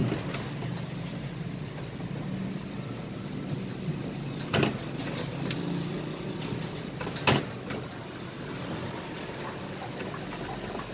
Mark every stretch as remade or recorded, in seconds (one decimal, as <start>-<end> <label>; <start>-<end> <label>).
0.0-10.9 recorded